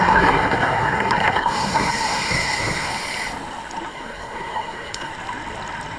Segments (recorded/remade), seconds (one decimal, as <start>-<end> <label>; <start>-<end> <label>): 0.0-2.9 remade; 2.9-3.9 recorded; 3.9-5.1 remade; 5.1-6.0 recorded